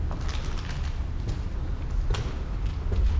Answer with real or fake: real